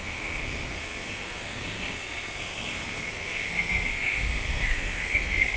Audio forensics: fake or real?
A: fake